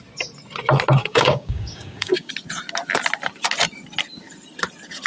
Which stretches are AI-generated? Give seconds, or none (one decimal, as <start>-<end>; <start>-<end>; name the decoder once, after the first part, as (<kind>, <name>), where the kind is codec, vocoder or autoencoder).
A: 1.0-2.3 (codec, DAC)